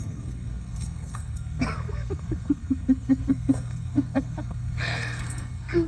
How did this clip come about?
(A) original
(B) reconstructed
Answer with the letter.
B